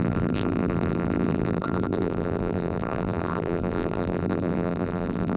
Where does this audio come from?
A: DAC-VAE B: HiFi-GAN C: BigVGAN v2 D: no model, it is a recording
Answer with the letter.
C